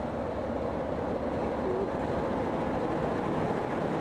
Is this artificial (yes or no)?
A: no